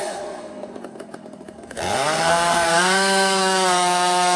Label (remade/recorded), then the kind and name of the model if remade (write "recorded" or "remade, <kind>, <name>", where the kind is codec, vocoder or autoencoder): remade, codec, SNAC